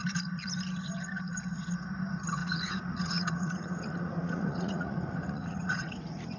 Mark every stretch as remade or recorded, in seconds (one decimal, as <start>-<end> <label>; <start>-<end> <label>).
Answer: 0.0-2.4 recorded; 2.4-6.4 remade